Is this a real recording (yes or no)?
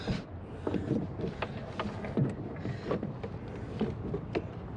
yes